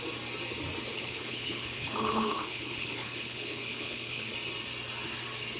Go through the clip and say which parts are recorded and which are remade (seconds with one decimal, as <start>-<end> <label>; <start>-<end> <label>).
0.0-0.9 recorded; 0.9-4.3 remade; 4.3-5.6 recorded